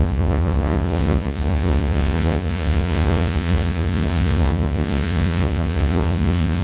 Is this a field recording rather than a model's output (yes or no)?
no